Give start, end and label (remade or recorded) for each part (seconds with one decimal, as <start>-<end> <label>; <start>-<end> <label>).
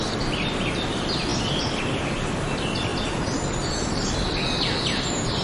0.0-5.4 recorded